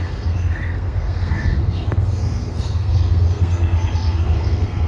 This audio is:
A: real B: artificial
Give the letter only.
B